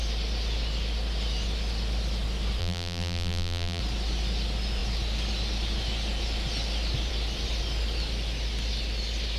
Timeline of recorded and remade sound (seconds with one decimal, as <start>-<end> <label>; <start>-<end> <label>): 0.0-2.6 recorded; 2.6-3.8 remade; 3.8-9.4 recorded